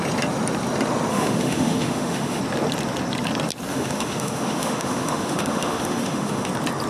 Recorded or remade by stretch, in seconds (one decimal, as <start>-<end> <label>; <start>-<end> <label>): 0.0-1.1 recorded; 1.1-2.4 remade; 2.4-3.7 recorded; 3.7-6.5 remade; 6.5-6.9 recorded